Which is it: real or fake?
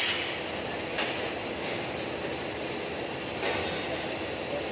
real